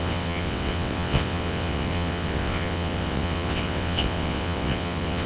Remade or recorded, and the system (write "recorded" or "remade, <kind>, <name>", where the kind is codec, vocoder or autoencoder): remade, vocoder, WaveNeXt